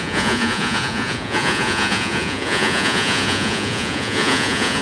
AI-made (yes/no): yes